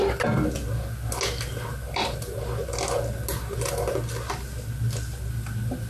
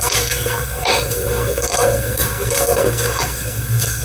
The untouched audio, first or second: first